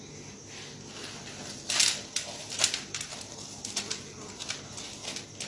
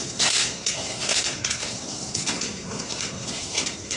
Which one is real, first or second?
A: first